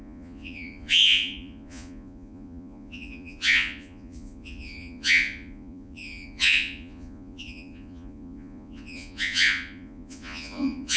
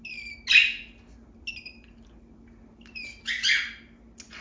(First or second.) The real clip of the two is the second